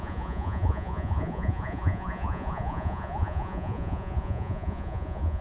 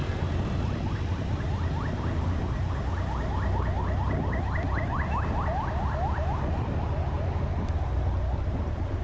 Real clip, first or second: second